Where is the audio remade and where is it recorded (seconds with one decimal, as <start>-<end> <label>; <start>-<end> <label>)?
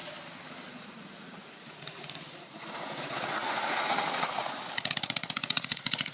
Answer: 0.0-0.8 recorded; 0.8-6.1 remade